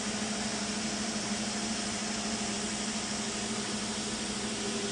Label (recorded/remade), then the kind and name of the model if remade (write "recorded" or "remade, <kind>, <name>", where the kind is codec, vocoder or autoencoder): recorded